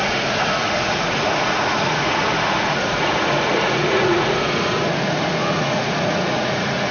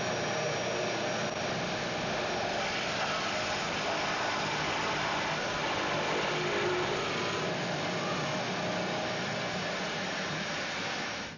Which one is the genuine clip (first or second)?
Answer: second